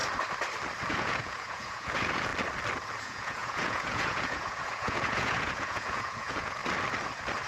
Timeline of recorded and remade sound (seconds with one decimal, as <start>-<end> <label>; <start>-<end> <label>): 0.0-0.9 recorded; 0.9-2.3 remade; 2.3-3.0 recorded; 3.0-6.6 remade; 6.6-7.5 recorded